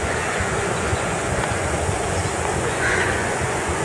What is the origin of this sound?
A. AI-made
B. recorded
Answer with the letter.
A